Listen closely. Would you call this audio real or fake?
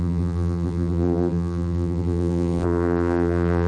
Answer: fake